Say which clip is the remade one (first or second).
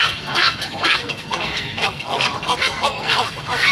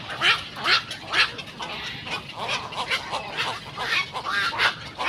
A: first